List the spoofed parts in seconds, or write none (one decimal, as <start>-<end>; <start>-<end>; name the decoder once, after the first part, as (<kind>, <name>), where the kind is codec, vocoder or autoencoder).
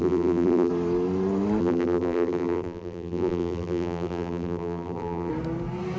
0.0-0.7 (vocoder, BigVGAN v2); 1.6-5.3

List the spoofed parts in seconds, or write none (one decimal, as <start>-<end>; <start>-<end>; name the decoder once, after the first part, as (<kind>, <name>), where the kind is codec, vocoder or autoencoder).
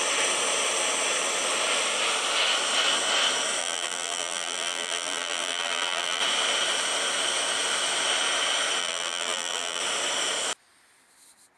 3.6-6.2 (vocoder, BigVGAN v2); 8.8-9.8